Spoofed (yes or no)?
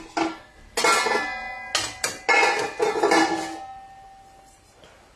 no